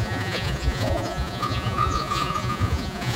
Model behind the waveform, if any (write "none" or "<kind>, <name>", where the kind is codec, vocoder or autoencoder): vocoder, Vocos